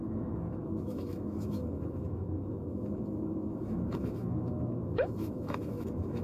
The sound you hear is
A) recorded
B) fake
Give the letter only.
B